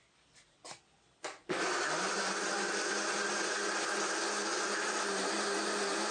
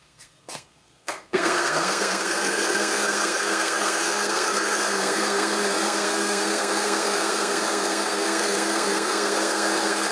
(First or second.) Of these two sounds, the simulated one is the second